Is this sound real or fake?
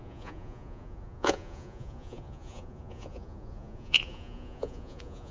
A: fake